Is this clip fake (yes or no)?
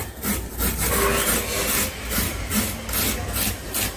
no